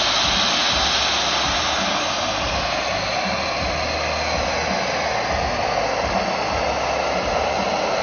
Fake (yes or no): no